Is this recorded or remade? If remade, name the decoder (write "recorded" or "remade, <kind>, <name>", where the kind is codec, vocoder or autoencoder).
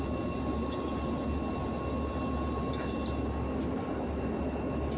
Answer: recorded